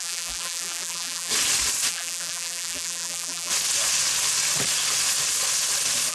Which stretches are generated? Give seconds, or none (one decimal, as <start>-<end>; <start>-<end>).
0.0-1.3; 1.9-3.5